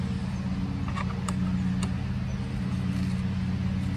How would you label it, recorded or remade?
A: recorded